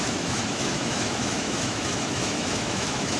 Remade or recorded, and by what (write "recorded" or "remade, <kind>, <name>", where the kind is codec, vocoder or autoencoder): remade, autoencoder, DAC-VAE